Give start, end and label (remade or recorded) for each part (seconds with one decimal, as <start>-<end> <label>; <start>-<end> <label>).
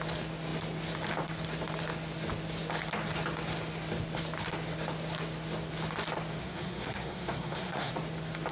0.0-6.4 recorded; 6.4-7.9 remade; 7.9-8.5 recorded